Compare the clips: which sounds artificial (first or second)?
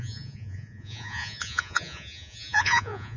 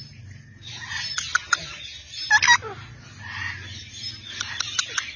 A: first